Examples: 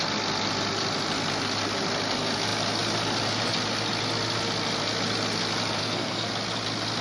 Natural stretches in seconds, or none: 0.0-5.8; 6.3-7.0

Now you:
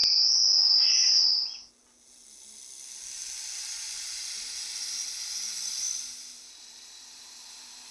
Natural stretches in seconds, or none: 0.0-7.9

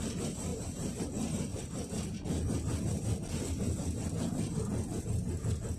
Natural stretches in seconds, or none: 0.0-0.5; 1.0-5.8

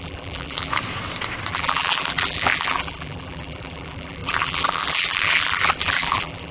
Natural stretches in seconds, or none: 0.7-1.5

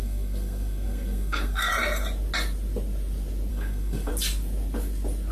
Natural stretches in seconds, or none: 1.7-3.5; 4.1-5.3

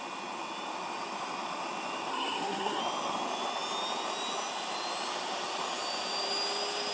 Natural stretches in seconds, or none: 0.0-2.1; 2.8-6.9

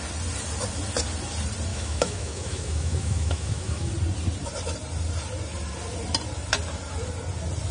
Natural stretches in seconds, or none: 0.0-1.7; 3.9-7.7

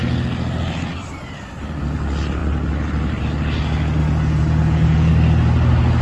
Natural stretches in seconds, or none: 0.0-4.0; 5.1-6.0